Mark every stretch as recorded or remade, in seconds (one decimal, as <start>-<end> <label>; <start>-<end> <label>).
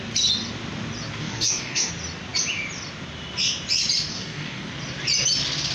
0.0-1.2 recorded; 1.2-1.9 remade; 1.9-4.1 recorded; 4.1-4.7 remade; 4.7-5.7 recorded